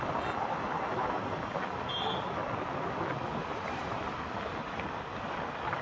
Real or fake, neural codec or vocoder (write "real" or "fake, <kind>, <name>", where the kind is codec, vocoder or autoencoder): real